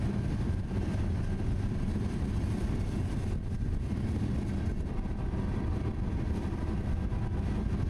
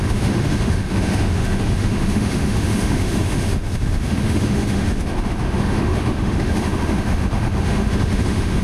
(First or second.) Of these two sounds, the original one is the first